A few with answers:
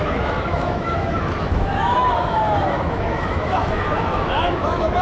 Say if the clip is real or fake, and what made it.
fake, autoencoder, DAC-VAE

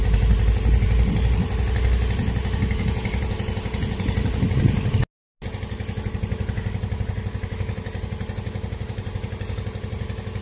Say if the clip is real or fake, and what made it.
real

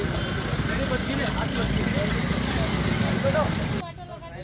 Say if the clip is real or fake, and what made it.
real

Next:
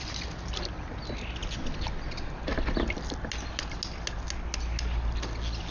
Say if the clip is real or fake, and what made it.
real